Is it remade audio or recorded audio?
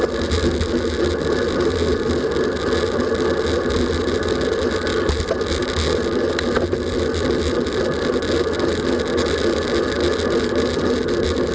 recorded